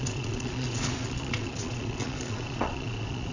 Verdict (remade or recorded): remade